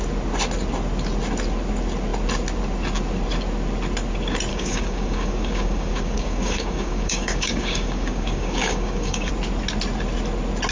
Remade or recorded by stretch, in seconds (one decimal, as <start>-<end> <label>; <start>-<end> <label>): 0.0-4.5 recorded; 4.5-9.3 remade; 9.3-10.7 recorded